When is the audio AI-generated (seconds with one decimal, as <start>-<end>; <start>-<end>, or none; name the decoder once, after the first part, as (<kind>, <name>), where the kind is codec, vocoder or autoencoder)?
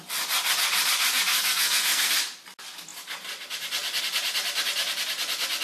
1.3-2.1 (codec, SNAC)